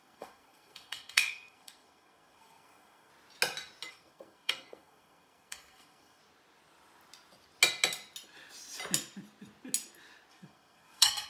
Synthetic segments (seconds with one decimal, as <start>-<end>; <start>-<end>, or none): 0.0-3.1; 3.9-6.2; 10.3-11.3